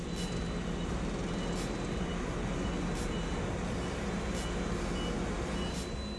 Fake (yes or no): no